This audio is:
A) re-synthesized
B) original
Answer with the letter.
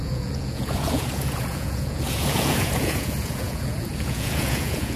A